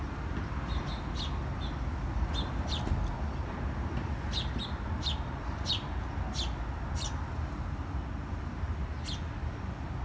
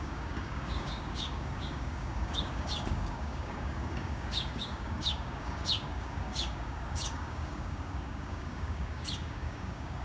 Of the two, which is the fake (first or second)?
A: second